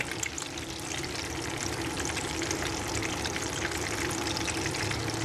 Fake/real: real